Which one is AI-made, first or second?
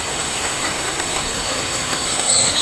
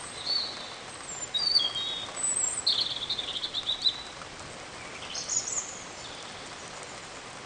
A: first